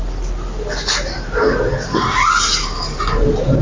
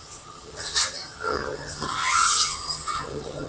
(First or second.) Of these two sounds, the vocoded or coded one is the second